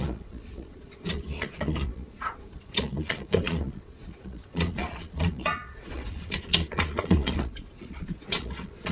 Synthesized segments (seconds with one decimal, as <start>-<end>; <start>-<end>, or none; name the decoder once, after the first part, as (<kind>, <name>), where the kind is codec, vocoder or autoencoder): 0.0-8.9 (vocoder, Vocos)

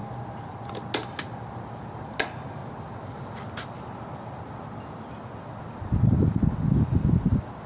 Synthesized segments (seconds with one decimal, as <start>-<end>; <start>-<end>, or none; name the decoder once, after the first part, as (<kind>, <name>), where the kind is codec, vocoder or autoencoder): none

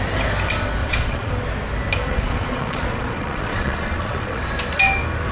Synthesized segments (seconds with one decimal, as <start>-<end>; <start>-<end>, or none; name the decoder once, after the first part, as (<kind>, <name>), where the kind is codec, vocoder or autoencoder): 0.8-1.3 (vocoder, Vocos); 2.1-4.4

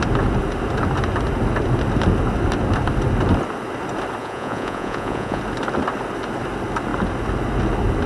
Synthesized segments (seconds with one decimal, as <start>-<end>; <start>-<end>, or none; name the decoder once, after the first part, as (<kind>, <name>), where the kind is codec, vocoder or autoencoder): 4.2-5.4 (vocoder, Vocos)

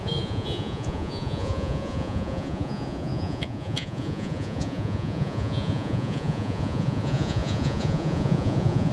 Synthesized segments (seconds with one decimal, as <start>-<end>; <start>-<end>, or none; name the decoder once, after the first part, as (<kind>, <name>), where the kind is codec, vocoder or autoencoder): 0.0-8.9 (vocoder, Vocos)

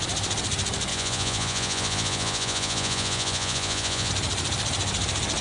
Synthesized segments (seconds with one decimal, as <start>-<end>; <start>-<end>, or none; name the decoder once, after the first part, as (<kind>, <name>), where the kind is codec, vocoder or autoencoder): 0.9-4.1 (vocoder, Vocos)

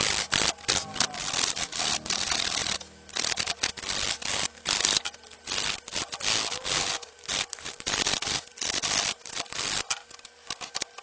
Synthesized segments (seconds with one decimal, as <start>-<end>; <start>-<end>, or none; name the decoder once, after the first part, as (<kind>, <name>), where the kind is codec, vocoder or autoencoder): none